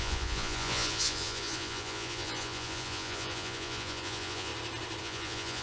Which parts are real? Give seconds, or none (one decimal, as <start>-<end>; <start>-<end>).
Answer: 4.5-5.0